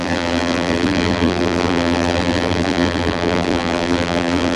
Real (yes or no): no